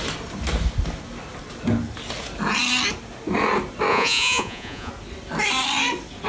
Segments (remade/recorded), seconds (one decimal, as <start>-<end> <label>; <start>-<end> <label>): 0.0-3.9 recorded; 3.9-4.9 remade; 4.9-6.3 recorded